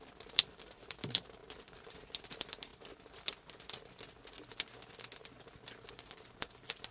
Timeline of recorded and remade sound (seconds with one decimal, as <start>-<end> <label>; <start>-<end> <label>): 0.0-1.4 remade; 1.4-2.2 recorded; 2.2-2.7 remade; 2.7-5.9 recorded; 5.9-6.9 remade